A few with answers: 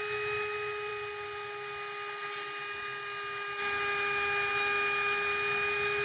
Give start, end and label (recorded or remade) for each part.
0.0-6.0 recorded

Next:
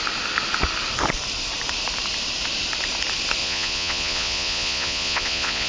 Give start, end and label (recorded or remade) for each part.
0.0-3.4 recorded; 3.4-5.7 remade

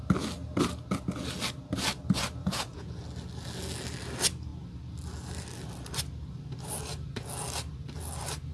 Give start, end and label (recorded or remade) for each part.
0.0-2.4 recorded; 2.4-3.0 remade; 3.0-8.5 recorded

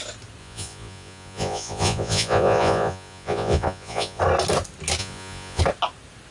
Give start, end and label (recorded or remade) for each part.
0.0-0.4 recorded; 0.4-4.2 remade; 4.2-5.0 recorded; 5.0-5.6 remade; 5.6-6.3 recorded

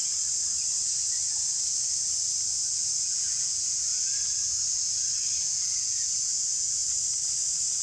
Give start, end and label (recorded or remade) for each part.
0.0-3.0 recorded; 3.0-3.9 remade; 3.9-5.4 recorded; 5.4-6.8 remade; 6.8-7.8 recorded